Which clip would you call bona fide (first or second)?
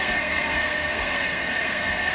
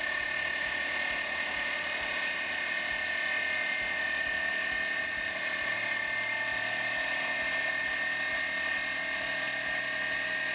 second